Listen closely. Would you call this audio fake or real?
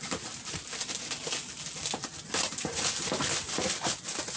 real